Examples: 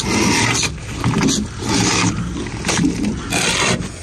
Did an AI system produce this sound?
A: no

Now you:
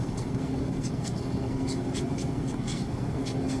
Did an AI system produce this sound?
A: yes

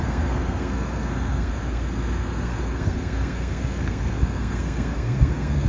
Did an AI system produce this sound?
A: yes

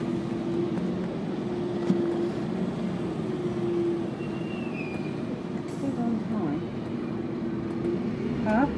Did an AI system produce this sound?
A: no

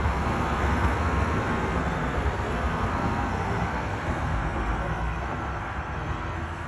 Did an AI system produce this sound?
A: yes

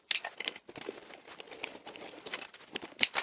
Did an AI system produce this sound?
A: no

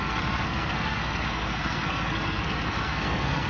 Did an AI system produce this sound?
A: yes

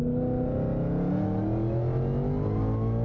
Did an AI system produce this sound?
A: no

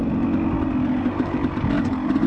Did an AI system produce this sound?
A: no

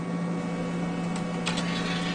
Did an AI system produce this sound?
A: no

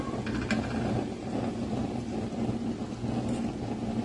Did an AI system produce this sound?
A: no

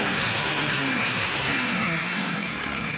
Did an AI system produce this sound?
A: yes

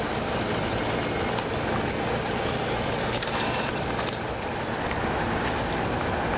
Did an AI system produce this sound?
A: no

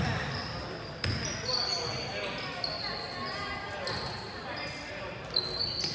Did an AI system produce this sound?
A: no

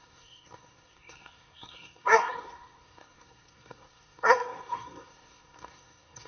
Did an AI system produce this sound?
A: yes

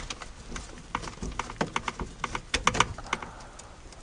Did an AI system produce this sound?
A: no